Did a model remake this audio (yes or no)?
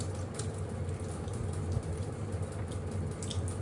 no